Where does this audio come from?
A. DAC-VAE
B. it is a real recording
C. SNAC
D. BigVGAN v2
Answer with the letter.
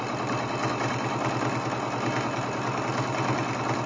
B